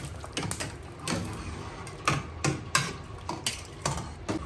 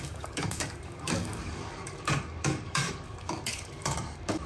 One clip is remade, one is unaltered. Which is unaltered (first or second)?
first